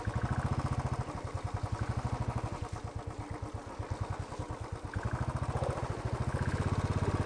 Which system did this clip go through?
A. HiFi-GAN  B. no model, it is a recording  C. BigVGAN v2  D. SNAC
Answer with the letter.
B